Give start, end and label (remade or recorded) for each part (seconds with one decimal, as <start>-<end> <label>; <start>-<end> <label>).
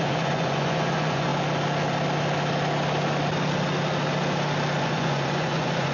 0.0-1.3 remade; 1.3-4.8 recorded; 4.8-5.9 remade